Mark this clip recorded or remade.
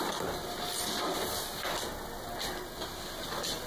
recorded